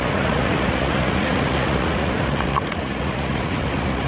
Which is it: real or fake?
fake